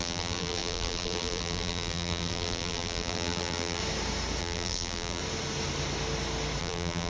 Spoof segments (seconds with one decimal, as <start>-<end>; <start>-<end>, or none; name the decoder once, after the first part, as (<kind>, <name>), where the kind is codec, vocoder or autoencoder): 0.0-3.8 (vocoder, BigVGAN v2); 4.4-5.2; 6.6-7.1